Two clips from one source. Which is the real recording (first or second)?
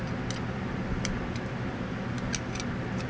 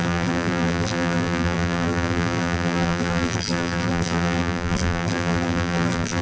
first